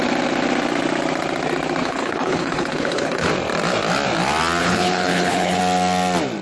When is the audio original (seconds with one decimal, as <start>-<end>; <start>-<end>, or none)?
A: 0.0-1.8; 3.3-4.6; 5.6-6.4